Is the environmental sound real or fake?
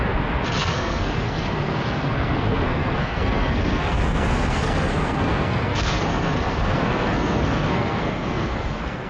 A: fake